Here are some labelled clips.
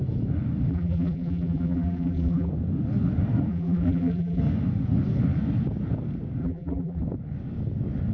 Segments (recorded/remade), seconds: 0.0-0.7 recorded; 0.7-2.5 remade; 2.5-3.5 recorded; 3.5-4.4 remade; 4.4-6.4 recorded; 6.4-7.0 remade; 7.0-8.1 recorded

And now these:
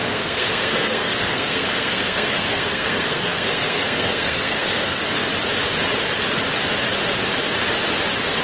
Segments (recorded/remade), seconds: 0.0-5.0 remade; 5.0-8.4 recorded